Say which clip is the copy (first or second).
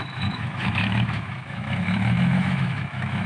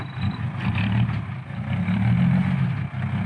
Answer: first